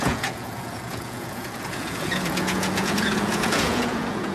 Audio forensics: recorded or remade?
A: remade